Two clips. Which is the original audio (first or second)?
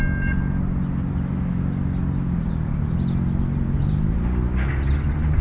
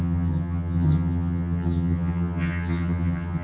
first